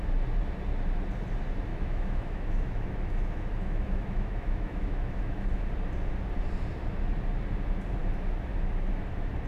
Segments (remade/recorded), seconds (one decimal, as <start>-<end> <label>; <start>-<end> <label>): 0.0-1.7 recorded; 1.7-5.6 remade; 5.6-9.5 recorded